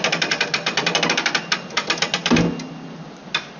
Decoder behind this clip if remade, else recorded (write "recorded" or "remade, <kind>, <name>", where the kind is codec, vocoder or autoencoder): recorded